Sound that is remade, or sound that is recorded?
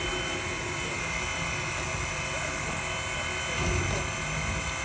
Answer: recorded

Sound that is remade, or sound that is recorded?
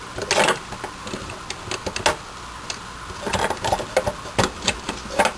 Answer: recorded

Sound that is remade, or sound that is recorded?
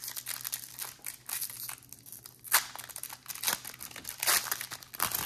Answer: recorded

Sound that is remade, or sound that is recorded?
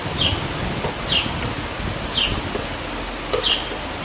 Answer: recorded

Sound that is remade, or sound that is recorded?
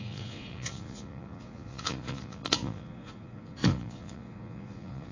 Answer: remade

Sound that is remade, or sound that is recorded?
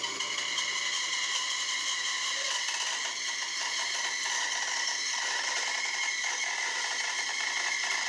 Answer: recorded